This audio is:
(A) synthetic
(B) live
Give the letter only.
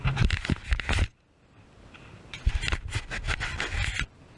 B